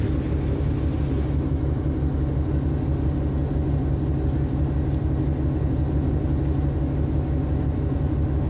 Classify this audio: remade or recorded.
recorded